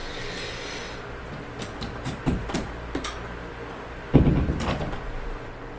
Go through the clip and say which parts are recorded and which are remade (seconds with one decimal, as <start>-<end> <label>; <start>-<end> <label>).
0.0-5.8 recorded